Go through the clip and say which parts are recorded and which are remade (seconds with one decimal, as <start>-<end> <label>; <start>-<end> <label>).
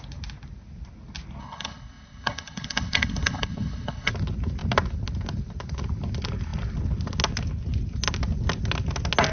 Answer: 0.0-1.4 recorded; 1.4-4.1 remade; 4.1-9.3 recorded